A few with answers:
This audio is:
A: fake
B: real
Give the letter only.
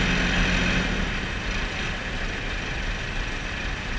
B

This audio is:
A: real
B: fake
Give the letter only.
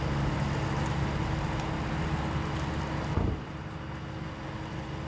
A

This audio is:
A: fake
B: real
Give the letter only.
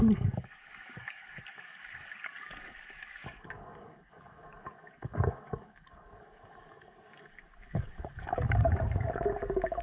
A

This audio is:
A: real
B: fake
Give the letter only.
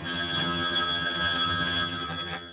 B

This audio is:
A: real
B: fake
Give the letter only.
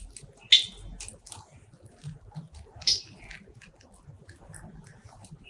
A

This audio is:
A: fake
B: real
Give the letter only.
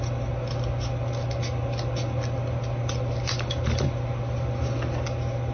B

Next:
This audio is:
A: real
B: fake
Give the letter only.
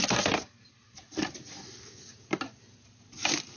A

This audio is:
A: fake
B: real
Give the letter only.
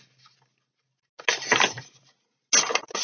B